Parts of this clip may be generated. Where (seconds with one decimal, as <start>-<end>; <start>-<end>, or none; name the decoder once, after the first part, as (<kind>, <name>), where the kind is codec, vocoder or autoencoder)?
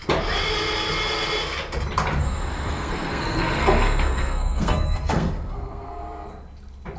2.2-6.0 (codec, SNAC)